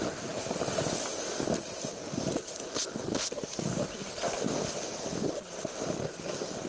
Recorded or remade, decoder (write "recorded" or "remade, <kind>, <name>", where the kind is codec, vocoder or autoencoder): remade, vocoder, BigVGAN v2